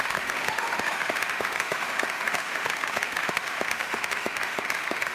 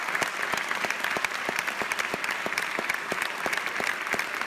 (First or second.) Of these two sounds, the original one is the second